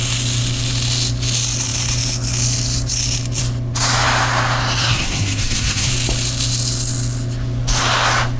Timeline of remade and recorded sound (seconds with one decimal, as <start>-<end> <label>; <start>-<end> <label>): 0.0-4.8 recorded; 4.8-5.9 remade; 5.9-8.4 recorded